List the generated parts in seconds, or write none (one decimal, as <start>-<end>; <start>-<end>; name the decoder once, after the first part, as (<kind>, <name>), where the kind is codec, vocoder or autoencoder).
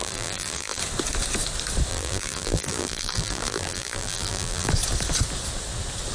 0.0-0.8 (vocoder, BigVGAN v2); 1.9-4.7